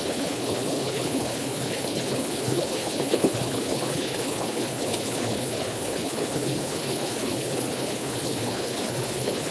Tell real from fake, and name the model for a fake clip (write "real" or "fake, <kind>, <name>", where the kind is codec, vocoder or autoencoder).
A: fake, codec, HILCodec